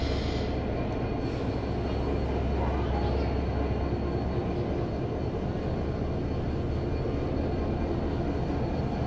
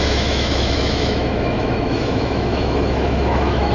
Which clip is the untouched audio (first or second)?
first